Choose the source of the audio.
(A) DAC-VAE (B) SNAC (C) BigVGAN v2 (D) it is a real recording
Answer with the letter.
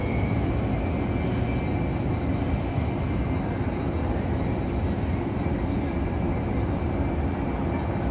D